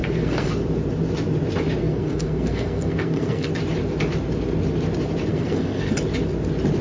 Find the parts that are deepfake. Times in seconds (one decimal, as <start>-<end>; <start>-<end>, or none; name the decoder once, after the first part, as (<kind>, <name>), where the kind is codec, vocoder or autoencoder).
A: 0.0-0.5 (codec, SNAC); 1.8-3.5; 5.3-5.9